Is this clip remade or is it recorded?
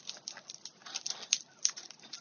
recorded